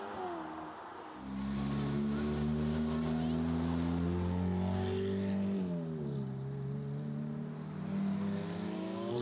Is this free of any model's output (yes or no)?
yes